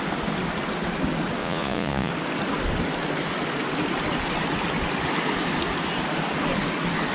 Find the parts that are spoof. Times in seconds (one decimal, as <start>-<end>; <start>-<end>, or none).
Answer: 1.4-2.1